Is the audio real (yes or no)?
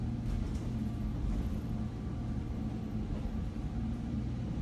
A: yes